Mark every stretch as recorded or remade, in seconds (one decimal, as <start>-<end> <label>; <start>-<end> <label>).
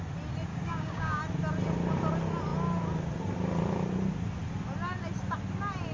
0.0-0.5 recorded; 0.5-1.2 remade; 1.2-5.9 recorded